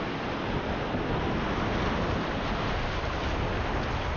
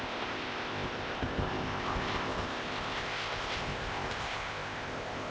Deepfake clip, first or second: second